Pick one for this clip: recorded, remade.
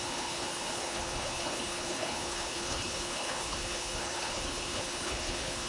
remade